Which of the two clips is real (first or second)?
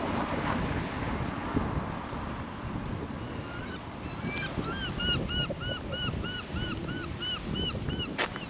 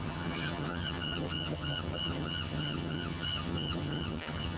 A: first